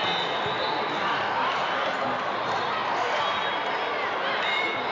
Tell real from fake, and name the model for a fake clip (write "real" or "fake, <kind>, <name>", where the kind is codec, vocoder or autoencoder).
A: real